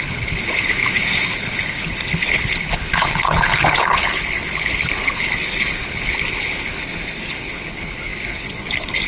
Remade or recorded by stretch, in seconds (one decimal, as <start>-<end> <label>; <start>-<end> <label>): 0.0-9.1 remade